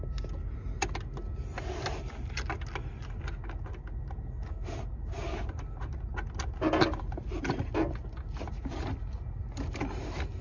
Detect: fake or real real